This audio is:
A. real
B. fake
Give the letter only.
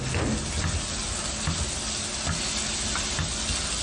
A